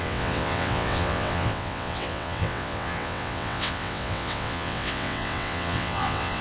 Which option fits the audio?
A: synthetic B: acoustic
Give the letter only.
A